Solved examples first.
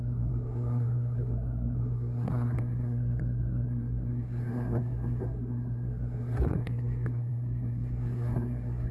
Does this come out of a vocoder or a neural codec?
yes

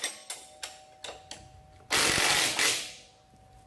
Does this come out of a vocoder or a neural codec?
no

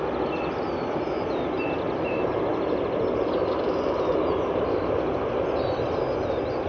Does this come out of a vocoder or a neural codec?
no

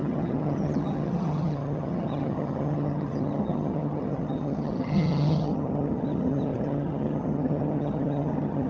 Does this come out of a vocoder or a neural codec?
yes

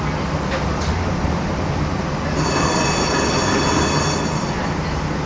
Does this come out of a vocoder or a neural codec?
no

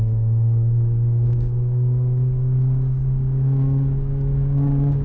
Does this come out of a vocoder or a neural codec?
yes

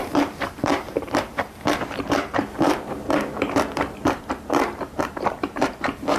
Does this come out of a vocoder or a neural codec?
yes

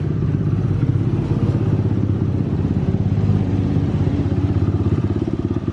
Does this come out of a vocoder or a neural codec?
yes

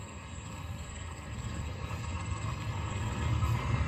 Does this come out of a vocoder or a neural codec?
yes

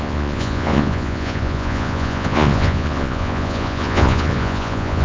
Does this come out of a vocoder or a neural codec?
yes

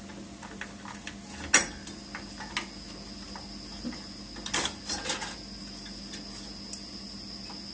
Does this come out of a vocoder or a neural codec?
no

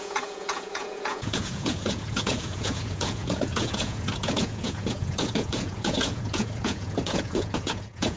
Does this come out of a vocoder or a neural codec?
yes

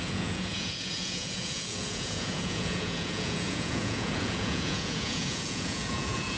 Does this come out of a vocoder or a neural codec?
yes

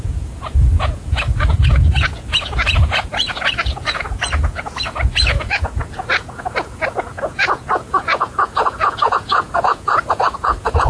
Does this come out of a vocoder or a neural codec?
yes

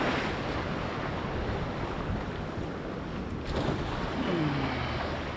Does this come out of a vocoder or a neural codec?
no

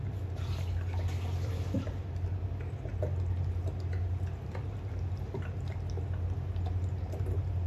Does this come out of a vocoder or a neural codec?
no